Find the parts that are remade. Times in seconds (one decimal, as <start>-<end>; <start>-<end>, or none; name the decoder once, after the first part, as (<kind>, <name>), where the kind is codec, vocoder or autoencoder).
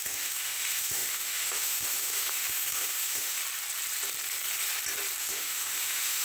0.0-3.4 (autoencoder, DAC-VAE); 5.2-6.2